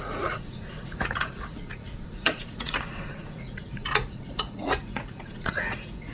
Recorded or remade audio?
remade